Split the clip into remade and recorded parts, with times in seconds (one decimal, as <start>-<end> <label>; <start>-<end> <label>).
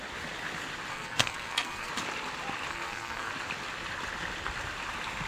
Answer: 0.0-0.9 recorded; 0.9-1.9 remade; 1.9-2.7 recorded; 2.7-3.3 remade; 3.3-5.3 recorded